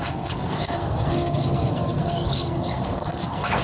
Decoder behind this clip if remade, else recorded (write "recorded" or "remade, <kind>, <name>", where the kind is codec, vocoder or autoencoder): remade, codec, SNAC